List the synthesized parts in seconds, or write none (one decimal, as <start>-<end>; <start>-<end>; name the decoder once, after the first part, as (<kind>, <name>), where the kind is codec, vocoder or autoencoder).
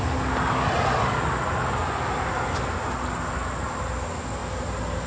none